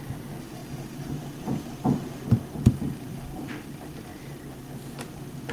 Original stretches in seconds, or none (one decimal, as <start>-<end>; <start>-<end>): 0.0-0.6; 3.1-5.5